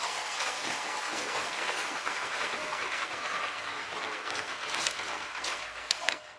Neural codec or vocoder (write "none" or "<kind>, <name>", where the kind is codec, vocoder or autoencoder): codec, SNAC